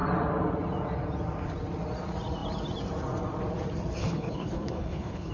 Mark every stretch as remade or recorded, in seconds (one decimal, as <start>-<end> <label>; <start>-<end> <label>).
0.0-4.0 recorded; 4.0-5.3 remade